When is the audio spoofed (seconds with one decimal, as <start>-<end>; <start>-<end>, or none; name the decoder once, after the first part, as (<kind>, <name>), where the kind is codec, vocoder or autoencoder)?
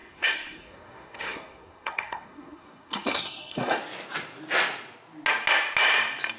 0.0-3.8 (codec, SNAC)